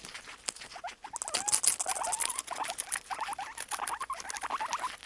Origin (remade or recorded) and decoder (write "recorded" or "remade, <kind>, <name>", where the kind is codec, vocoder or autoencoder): recorded